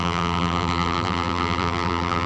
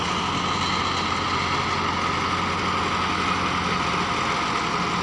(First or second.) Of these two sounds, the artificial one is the first